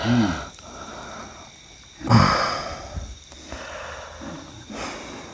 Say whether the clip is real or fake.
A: real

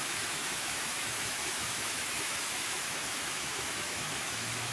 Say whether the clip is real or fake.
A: fake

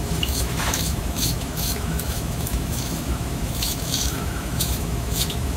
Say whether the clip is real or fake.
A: fake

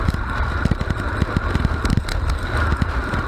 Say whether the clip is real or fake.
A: real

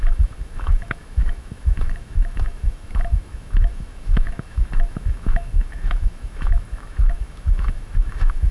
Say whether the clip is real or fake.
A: fake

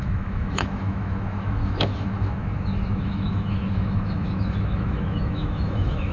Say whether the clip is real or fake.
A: fake